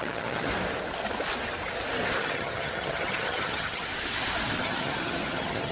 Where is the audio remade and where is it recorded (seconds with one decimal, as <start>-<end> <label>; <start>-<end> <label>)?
0.0-0.5 remade; 0.5-2.2 recorded; 2.2-3.9 remade; 3.9-4.6 recorded; 4.6-5.7 remade